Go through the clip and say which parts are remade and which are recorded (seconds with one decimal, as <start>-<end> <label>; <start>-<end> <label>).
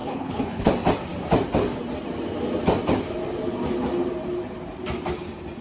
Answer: 0.0-0.7 remade; 0.7-5.6 recorded